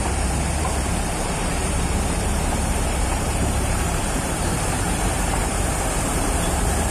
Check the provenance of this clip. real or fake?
fake